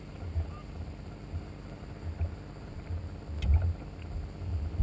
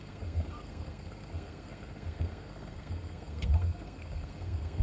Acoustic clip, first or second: first